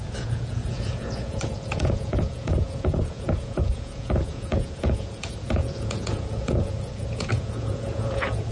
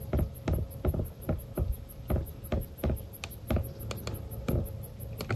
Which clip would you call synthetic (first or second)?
first